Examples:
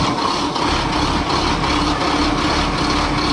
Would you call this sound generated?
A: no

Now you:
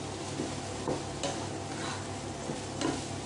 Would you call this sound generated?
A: no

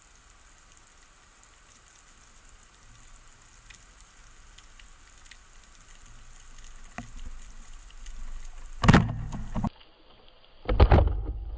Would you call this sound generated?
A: no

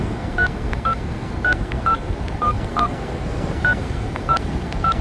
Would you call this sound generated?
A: yes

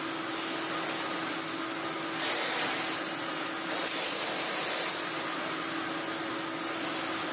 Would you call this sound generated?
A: no